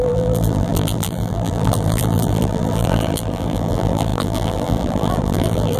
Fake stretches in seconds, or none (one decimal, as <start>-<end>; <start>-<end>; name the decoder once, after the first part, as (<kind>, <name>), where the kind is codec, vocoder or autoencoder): 0.0-5.8 (vocoder, BigVGAN v2)